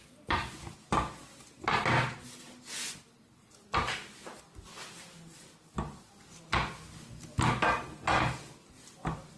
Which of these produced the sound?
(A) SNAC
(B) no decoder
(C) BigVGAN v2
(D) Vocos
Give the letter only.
B